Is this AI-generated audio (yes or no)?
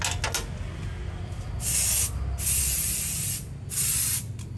no